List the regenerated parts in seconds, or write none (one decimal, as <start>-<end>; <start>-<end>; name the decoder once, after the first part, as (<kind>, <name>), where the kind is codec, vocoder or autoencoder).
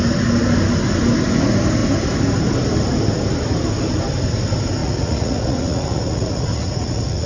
4.8-7.3 (vocoder, Vocos)